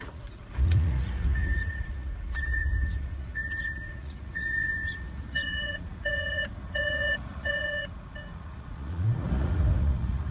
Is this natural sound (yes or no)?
no